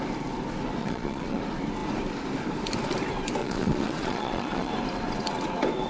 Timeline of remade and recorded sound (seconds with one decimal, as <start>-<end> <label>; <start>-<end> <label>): 0.0-0.8 recorded; 0.8-1.4 remade; 1.4-3.4 recorded; 3.4-4.7 remade; 4.7-5.9 recorded